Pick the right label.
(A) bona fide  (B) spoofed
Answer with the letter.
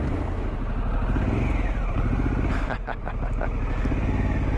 A